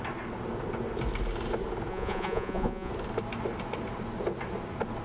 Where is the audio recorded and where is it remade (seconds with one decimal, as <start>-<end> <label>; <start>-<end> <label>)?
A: 0.0-1.9 recorded; 1.9-2.9 remade; 2.9-5.0 recorded